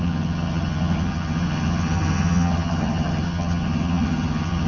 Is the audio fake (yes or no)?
yes